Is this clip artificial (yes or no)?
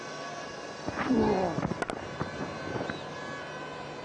no